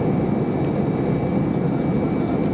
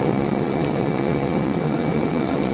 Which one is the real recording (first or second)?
first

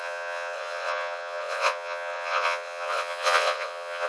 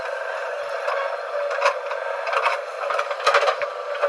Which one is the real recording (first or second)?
second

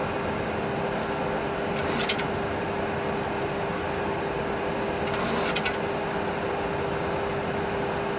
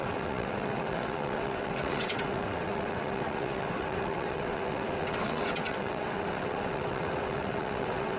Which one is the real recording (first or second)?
first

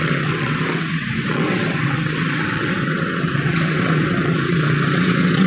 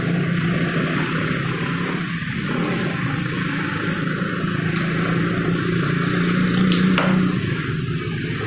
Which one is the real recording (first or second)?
second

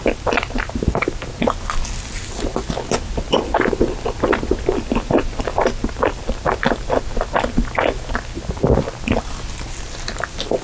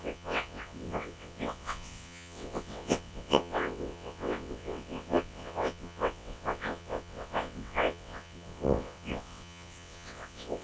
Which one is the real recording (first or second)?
first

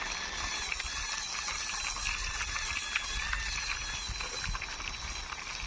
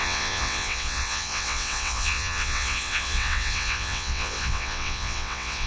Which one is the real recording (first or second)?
first